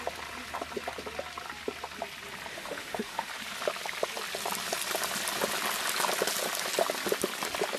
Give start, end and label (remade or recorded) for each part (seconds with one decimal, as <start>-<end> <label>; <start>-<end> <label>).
0.0-2.5 recorded; 2.5-3.3 remade; 3.3-7.8 recorded